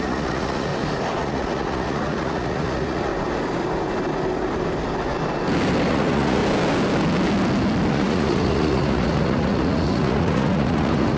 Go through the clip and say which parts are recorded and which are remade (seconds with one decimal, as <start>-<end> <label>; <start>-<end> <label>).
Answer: 0.0-0.7 remade; 0.7-1.2 recorded; 1.2-3.1 remade; 3.1-5.9 recorded; 5.9-6.4 remade; 6.4-7.9 recorded; 7.9-11.2 remade